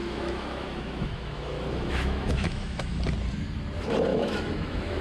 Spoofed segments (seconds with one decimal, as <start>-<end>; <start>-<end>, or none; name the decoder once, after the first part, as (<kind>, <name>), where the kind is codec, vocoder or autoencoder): 0.0-3.0 (autoencoder, DAC-VAE); 4.1-5.0